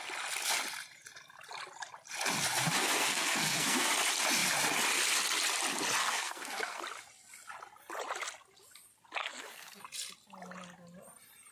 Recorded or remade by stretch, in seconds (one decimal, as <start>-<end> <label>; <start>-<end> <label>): 0.0-2.8 recorded; 2.8-3.9 remade; 3.9-6.0 recorded; 6.0-6.8 remade; 6.8-9.2 recorded; 9.2-9.8 remade; 9.8-11.5 recorded